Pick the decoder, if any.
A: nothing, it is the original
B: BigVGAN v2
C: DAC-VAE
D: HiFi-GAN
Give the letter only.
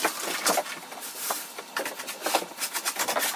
A